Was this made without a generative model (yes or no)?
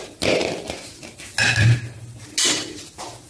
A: yes